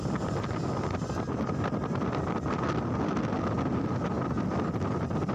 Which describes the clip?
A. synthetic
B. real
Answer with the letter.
B